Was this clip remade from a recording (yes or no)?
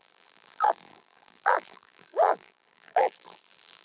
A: yes